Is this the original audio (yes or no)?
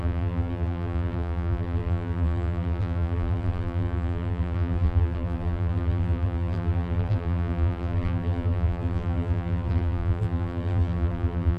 no